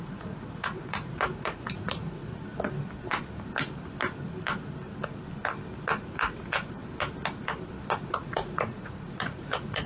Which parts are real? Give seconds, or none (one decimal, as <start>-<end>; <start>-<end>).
2.3-6.1; 6.8-8.1